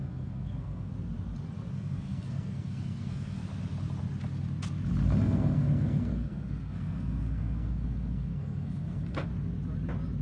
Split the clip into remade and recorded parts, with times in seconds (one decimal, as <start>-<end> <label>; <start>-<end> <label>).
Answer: 0.0-0.9 remade; 0.9-1.7 recorded; 1.7-3.4 remade; 3.4-5.2 recorded; 5.2-9.3 remade; 9.3-10.2 recorded